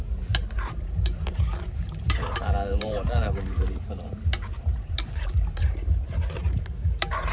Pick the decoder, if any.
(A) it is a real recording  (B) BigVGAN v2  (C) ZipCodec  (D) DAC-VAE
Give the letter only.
B